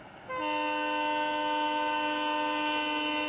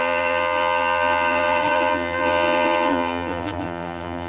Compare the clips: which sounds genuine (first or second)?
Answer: first